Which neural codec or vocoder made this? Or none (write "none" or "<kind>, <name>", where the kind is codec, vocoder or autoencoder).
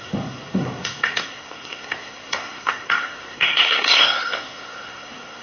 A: codec, SNAC